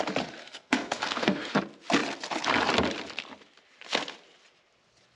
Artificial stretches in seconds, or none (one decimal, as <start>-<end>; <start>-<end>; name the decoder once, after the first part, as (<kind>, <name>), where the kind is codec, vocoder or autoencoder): 0.4-1.6 (codec, SNAC)